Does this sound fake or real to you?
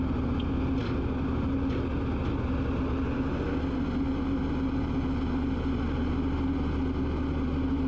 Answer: real